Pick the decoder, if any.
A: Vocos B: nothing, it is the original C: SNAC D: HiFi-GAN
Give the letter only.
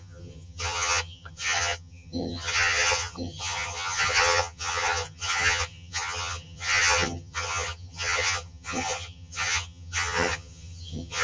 D